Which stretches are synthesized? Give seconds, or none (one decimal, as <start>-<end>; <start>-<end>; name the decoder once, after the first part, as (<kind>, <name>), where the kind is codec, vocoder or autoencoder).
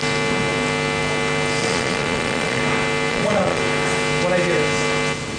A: 1.6-2.6 (vocoder, Vocos); 3.1-3.6